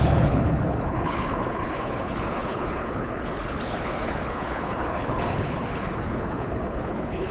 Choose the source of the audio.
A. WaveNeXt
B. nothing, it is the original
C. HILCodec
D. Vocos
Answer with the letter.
C